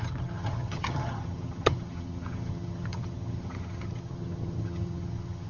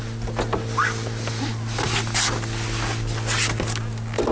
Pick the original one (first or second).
second